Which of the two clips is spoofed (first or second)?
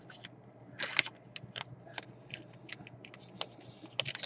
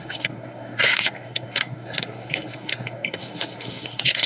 second